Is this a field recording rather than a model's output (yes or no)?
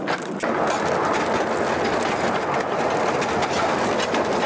yes